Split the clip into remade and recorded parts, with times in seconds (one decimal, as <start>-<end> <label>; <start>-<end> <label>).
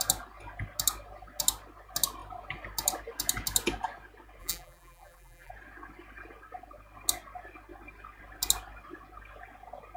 0.0-4.4 recorded; 4.4-5.5 remade; 5.5-10.0 recorded